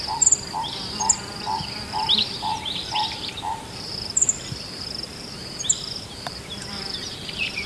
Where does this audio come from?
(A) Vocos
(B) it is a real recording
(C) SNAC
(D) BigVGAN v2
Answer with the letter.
D